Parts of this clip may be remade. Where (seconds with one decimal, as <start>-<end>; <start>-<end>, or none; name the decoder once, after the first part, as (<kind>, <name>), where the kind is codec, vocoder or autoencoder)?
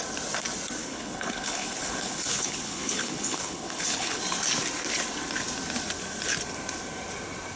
0.8-4.2 (codec, HILCodec)